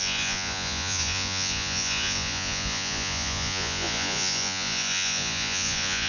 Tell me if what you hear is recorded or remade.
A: remade